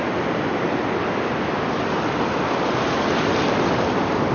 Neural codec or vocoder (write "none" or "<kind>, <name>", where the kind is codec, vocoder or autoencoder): none